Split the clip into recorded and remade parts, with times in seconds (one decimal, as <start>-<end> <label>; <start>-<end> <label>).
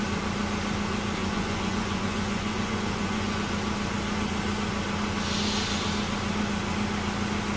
0.0-1.2 recorded; 1.2-3.4 remade; 3.4-7.6 recorded